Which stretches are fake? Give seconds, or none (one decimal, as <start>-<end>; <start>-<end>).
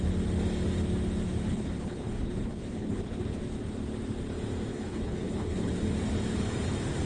1.5-3.4; 4.7-5.7